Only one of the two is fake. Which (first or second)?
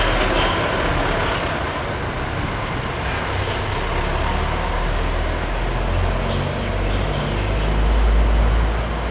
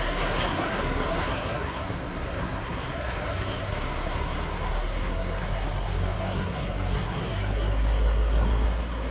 second